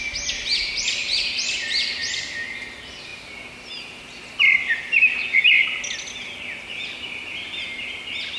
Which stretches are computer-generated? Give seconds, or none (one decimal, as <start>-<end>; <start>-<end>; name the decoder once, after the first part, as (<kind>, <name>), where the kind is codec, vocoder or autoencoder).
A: none